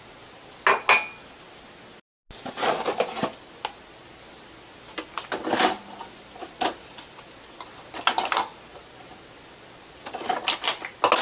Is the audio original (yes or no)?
yes